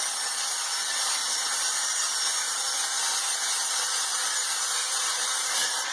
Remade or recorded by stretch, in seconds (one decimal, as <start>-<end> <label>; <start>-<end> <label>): 0.0-4.9 recorded; 4.9-5.9 remade